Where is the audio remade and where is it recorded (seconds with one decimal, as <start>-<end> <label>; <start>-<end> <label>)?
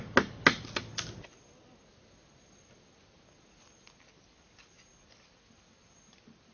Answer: 0.0-6.5 recorded